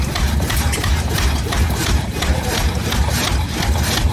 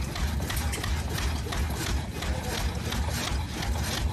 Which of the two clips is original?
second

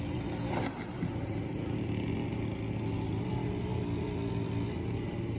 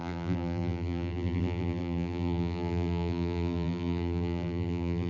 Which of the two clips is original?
first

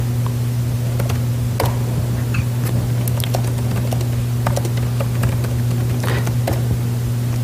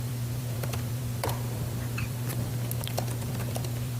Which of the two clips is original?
first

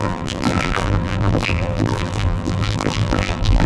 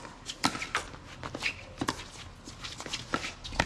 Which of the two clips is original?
second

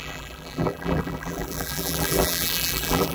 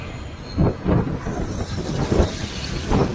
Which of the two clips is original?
second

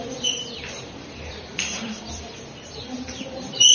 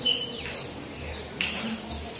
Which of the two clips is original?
second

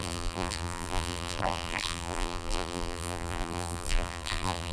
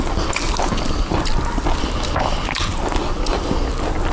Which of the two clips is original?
second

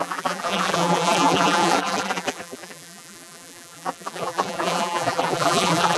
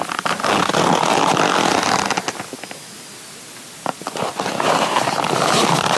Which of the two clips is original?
second